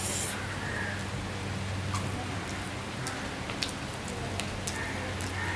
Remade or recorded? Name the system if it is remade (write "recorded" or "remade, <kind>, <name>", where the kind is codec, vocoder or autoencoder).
recorded